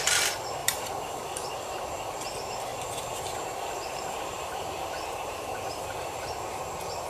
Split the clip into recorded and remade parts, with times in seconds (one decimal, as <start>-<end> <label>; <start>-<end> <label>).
0.0-0.6 recorded; 0.6-1.5 remade; 1.5-2.7 recorded; 2.7-6.2 remade; 6.2-7.1 recorded